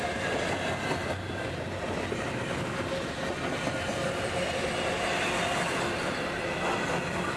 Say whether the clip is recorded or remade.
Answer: recorded